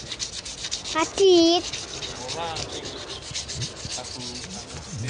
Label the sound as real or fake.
real